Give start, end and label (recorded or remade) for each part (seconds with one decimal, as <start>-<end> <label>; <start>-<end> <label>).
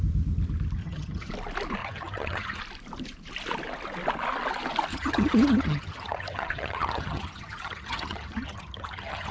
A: 0.0-0.8 recorded; 0.8-1.3 remade; 1.3-1.8 recorded; 1.8-2.6 remade; 2.6-4.9 recorded; 4.9-9.3 remade